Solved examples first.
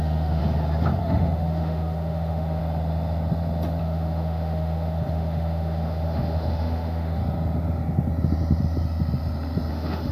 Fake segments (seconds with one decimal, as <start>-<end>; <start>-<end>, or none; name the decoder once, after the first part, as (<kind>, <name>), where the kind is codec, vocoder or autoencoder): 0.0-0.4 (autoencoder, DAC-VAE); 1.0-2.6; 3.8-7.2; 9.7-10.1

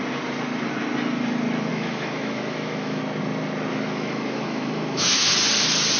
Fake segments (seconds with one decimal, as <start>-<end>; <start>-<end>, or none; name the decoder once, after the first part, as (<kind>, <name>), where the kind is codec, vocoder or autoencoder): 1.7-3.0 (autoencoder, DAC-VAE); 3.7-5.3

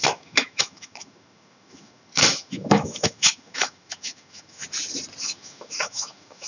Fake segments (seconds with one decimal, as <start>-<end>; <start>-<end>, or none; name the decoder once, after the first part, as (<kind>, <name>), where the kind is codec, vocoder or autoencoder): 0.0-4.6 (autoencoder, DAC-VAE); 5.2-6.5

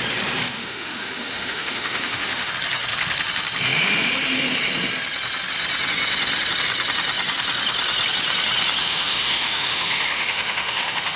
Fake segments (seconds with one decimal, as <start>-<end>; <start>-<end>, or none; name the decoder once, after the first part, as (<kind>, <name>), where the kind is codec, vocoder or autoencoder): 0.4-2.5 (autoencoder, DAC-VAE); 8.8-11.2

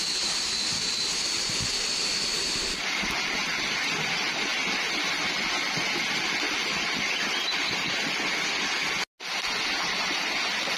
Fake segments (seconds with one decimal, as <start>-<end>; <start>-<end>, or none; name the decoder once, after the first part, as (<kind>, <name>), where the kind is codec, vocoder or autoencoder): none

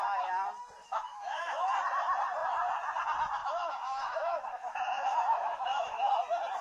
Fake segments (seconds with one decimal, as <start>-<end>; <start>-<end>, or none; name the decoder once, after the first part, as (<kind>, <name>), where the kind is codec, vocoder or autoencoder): 0.8-1.7 (autoencoder, DAC-VAE); 3.4-6.1

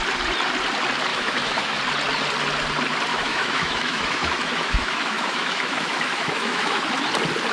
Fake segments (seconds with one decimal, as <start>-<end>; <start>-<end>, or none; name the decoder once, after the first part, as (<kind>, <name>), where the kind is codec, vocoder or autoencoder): 1.1-1.8 (autoencoder, DAC-VAE); 3.1-6.8